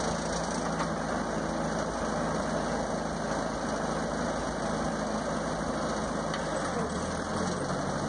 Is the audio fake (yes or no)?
no